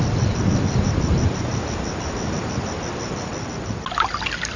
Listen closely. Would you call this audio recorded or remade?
recorded